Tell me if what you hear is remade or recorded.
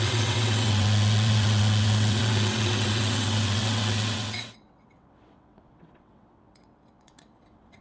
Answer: remade